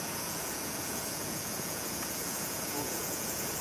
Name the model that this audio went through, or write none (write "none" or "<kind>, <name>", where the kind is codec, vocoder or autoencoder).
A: vocoder, Vocos